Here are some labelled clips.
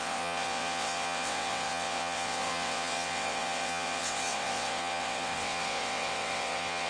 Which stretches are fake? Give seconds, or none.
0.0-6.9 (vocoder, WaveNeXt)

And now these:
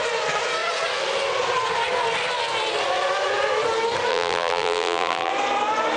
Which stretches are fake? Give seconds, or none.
4.1-5.3 (vocoder, BigVGAN v2)

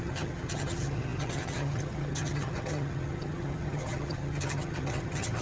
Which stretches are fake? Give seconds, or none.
0.0-5.4 (vocoder, HiFi-GAN)

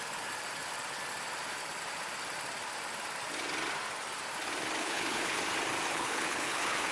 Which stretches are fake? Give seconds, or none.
4.8-5.4 (codec, HILCodec); 5.9-6.9

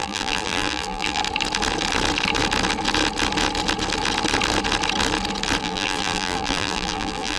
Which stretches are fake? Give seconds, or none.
0.0-1.2 (vocoder, BigVGAN v2); 5.6-7.4